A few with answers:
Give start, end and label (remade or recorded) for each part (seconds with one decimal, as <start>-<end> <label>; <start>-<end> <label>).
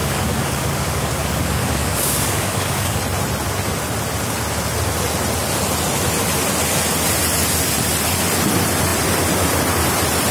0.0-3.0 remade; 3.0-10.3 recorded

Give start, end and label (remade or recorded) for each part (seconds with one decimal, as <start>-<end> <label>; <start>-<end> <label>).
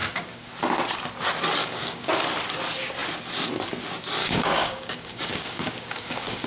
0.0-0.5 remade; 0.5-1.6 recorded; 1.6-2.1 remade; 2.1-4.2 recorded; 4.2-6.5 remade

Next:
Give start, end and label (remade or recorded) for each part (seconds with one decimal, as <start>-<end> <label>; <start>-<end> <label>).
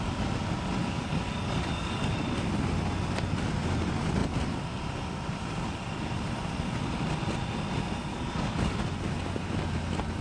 0.0-0.8 recorded; 0.8-2.2 remade; 2.2-8.1 recorded; 8.1-8.8 remade; 8.8-10.2 recorded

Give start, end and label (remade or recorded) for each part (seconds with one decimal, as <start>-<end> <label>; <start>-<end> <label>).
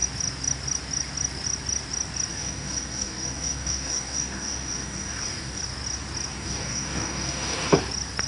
0.0-2.3 recorded; 2.3-5.6 remade; 5.6-6.4 recorded; 6.4-7.8 remade; 7.8-8.3 recorded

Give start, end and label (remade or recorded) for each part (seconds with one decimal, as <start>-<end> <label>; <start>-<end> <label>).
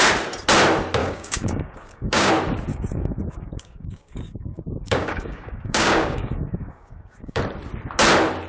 0.0-1.0 recorded; 1.0-2.3 remade; 2.3-2.7 recorded; 2.7-7.4 remade; 7.4-8.5 recorded